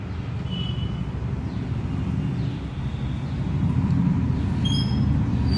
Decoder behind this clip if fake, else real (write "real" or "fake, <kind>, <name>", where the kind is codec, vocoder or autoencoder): real